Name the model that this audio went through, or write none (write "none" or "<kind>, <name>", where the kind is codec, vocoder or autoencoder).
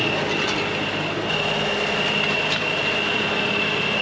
none